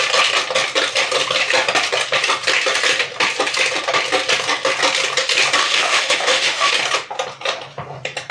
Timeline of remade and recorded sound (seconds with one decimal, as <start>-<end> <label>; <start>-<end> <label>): 0.0-5.6 recorded; 5.6-6.7 remade; 6.7-8.3 recorded

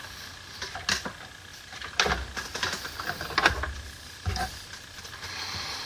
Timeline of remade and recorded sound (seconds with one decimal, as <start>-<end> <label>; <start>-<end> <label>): 0.0-5.9 recorded

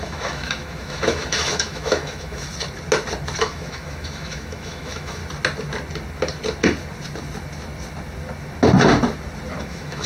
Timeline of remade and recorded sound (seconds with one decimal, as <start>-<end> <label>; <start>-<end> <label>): 0.0-2.5 remade; 2.5-3.4 recorded; 3.4-5.2 remade; 5.2-9.6 recorded; 9.6-10.1 remade

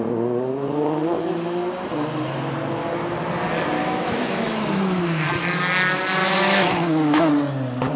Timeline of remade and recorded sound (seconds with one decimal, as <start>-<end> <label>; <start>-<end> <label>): 0.0-3.8 recorded; 3.8-5.6 remade; 5.6-6.2 recorded; 6.2-7.3 remade; 7.3-8.0 recorded

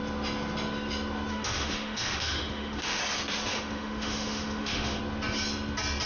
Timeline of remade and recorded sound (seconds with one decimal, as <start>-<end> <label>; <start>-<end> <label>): 0.0-1.3 recorded; 1.3-3.0 remade; 3.0-3.5 recorded; 3.5-5.0 remade; 5.0-6.1 recorded

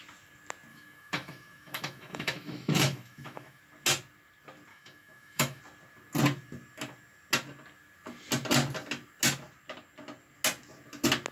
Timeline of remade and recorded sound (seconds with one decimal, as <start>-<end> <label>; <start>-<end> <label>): 0.0-0.7 recorded; 0.7-3.6 remade; 3.6-4.7 recorded; 4.7-5.6 remade; 5.6-11.3 recorded